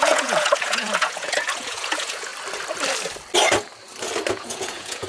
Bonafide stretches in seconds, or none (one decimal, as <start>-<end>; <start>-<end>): 2.3-4.3